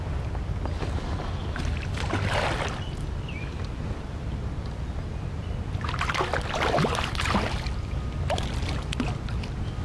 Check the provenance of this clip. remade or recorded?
recorded